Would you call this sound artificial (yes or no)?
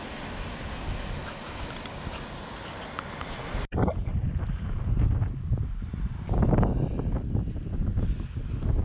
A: no